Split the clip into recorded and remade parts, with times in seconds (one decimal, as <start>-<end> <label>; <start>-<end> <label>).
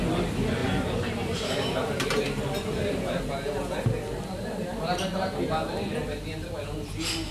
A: 0.0-0.6 recorded; 0.6-3.2 remade; 3.2-7.3 recorded